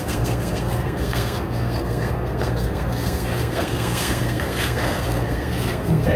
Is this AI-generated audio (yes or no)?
yes